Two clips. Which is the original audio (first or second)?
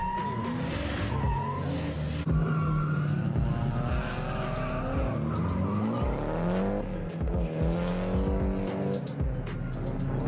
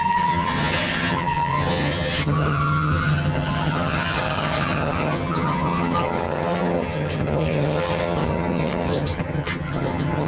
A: first